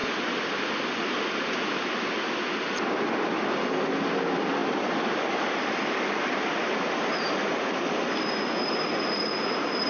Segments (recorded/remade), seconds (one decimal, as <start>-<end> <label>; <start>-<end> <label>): 0.0-4.6 recorded; 4.6-8.0 remade; 8.0-9.9 recorded